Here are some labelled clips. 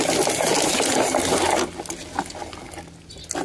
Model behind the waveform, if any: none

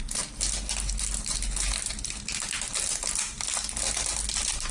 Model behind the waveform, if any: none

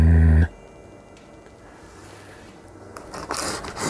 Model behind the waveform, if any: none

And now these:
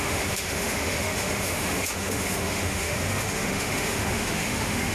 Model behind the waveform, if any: autoencoder, DAC-VAE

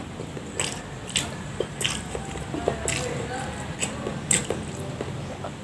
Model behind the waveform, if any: none